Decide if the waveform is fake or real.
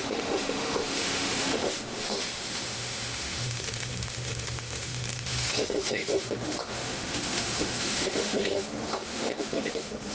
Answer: fake